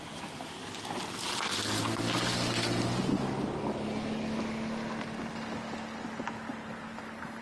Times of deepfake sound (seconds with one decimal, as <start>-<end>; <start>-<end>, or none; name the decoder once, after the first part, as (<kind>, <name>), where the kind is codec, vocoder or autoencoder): none